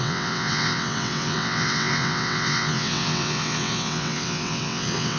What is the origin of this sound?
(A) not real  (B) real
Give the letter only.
A